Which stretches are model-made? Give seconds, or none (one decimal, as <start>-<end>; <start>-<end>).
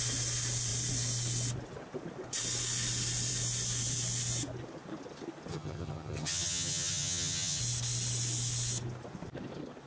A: 5.5-7.6